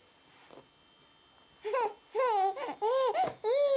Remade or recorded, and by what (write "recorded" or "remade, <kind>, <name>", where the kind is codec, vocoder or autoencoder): recorded